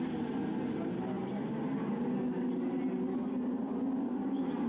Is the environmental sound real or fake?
real